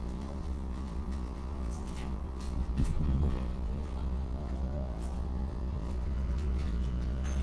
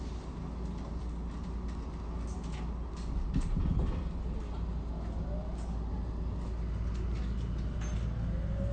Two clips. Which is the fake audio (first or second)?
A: first